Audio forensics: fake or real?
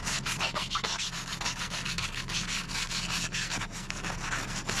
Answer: fake